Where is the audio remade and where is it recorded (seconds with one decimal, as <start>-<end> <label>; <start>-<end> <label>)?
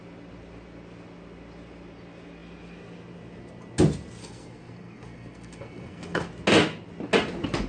0.0-4.2 recorded; 4.2-6.3 remade; 6.3-7.7 recorded